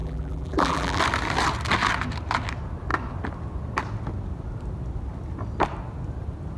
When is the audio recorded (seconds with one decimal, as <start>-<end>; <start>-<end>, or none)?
1.0-6.6